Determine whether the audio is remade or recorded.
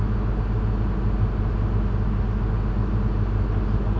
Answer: recorded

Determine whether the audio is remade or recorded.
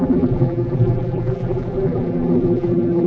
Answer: remade